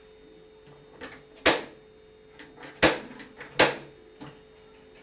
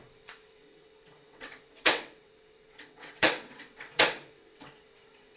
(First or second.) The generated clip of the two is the second